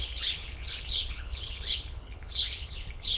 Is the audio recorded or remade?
remade